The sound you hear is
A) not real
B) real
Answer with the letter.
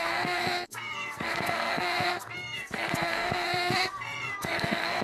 A